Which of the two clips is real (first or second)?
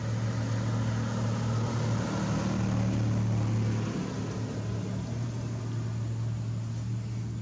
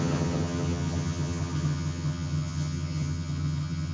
first